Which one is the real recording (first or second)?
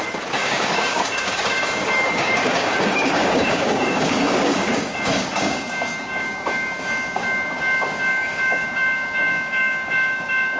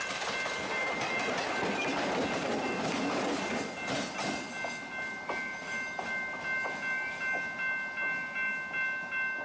second